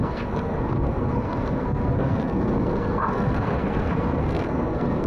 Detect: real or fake fake